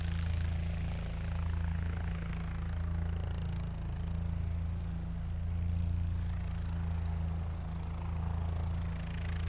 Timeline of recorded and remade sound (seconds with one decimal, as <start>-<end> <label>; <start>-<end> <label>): 0.0-1.7 recorded; 1.7-2.3 remade; 2.3-9.5 recorded